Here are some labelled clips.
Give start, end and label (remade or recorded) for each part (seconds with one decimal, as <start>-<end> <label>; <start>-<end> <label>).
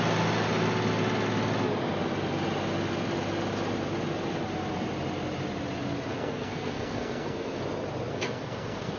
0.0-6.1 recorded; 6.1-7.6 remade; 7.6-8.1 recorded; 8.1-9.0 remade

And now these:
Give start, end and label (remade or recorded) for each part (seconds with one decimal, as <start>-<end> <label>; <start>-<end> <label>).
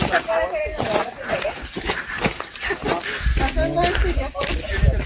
0.0-1.0 recorded; 1.0-1.5 remade; 1.5-5.1 recorded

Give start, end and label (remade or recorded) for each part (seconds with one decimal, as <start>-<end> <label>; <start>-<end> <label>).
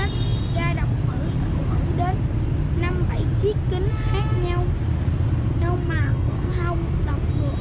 0.0-5.8 recorded; 5.8-6.5 remade; 6.5-7.6 recorded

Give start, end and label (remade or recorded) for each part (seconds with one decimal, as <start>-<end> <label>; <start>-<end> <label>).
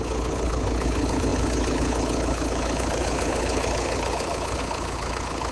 0.0-5.5 remade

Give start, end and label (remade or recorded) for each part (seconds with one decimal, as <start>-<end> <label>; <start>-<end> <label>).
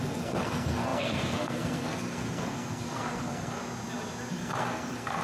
0.0-3.6 remade; 3.6-4.3 recorded; 4.3-5.2 remade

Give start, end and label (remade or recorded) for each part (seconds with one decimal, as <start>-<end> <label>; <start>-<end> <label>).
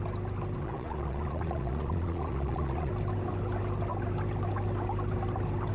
0.0-0.6 recorded; 0.6-2.9 remade; 2.9-5.7 recorded